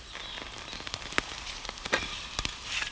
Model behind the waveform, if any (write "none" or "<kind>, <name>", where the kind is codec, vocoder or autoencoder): none